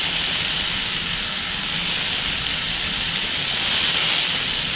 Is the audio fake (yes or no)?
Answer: no